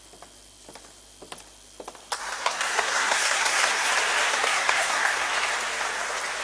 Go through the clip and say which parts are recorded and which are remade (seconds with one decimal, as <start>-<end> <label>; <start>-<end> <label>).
0.0-2.2 recorded; 2.2-3.9 remade; 3.9-4.3 recorded; 4.3-5.5 remade; 5.5-6.4 recorded